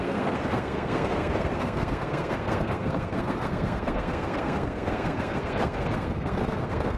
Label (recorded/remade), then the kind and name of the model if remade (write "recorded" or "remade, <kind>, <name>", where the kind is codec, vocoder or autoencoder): remade, codec, SNAC